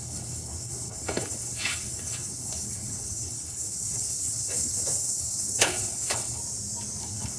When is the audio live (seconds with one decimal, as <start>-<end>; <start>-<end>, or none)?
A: 6.4-7.0